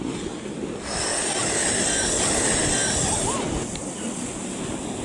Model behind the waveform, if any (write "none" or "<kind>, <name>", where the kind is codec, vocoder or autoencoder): none